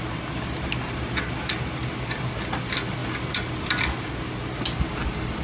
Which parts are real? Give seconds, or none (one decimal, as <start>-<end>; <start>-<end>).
0.0-5.4